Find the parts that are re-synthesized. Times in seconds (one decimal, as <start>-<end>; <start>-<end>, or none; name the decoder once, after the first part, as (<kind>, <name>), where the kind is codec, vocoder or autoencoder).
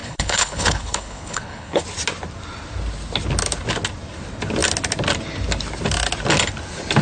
0.0-1.8 (codec, HILCodec)